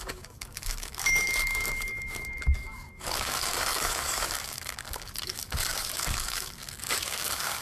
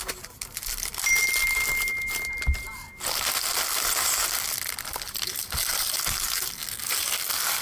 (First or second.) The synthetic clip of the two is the first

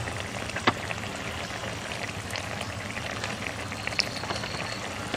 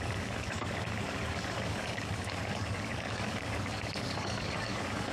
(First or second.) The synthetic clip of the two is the second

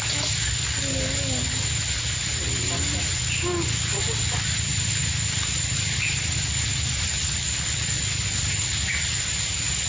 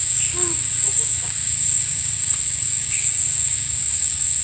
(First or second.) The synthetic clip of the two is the second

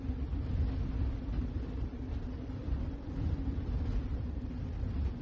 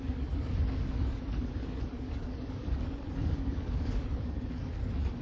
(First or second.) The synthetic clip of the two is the second